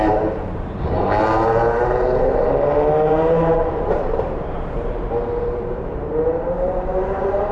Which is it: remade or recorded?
remade